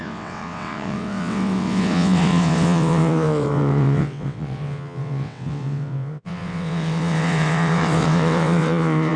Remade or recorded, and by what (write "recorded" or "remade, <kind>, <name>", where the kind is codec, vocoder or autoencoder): remade, vocoder, WaveNeXt